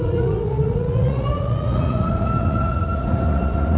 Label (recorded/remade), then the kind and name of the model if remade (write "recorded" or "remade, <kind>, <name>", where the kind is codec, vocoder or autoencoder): remade, vocoder, Vocos